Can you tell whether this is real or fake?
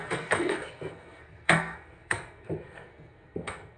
fake